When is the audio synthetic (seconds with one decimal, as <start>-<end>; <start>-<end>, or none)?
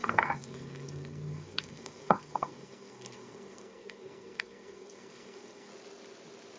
0.0-5.7